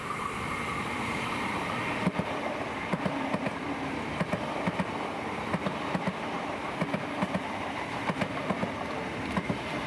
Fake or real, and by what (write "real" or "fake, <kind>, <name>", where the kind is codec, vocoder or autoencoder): fake, vocoder, BigVGAN v2